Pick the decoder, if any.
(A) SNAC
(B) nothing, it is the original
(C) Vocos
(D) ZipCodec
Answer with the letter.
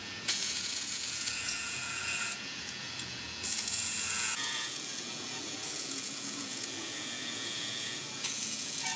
C